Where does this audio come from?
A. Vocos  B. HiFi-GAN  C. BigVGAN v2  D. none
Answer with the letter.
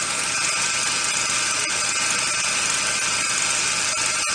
D